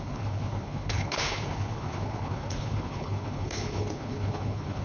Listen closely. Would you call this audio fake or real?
fake